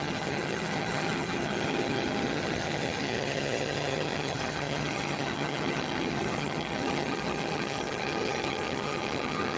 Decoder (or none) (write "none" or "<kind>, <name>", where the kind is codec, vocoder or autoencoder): vocoder, HiFi-GAN